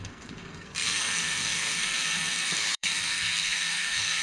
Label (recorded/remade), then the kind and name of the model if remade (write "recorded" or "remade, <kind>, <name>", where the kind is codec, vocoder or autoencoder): remade, codec, SNAC